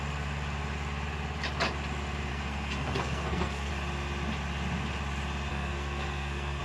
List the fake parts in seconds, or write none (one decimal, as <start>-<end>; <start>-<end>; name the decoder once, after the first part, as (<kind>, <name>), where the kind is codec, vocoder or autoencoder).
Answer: 2.3-3.7 (codec, SNAC); 5.5-6.6